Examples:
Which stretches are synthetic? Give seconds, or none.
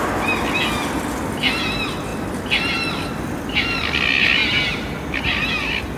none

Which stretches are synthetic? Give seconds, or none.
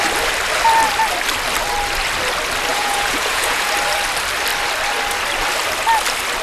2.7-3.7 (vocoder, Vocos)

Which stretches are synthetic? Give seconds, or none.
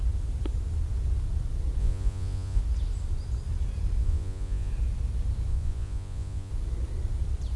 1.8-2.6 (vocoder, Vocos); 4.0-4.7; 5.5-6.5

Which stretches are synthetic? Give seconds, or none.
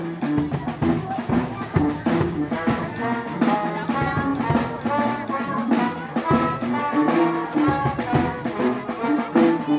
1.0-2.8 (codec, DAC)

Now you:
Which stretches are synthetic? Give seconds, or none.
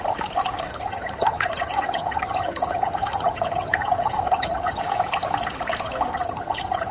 0.7-4.8 (vocoder, HiFi-GAN); 6.1-6.9